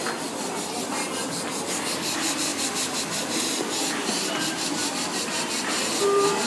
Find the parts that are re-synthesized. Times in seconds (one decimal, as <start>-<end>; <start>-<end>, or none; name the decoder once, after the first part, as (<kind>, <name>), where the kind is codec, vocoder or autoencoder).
none